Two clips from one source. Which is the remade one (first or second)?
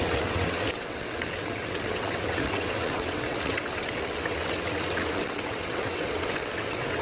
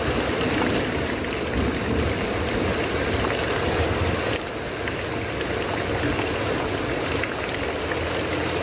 first